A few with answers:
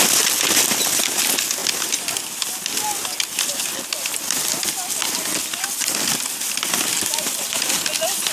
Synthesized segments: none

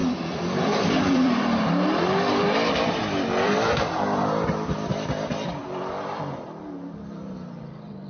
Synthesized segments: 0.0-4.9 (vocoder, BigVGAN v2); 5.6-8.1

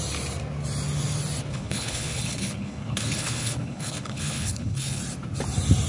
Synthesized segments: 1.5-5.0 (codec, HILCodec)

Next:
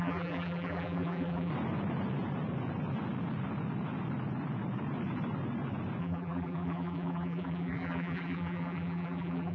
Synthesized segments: 0.0-1.5 (vocoder, BigVGAN v2); 6.0-9.5

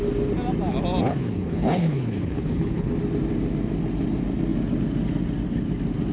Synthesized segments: 1.1-2.9 (codec, HILCodec)

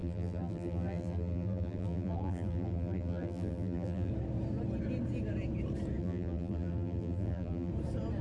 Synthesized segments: 0.0-4.1 (vocoder, BigVGAN v2); 6.0-7.7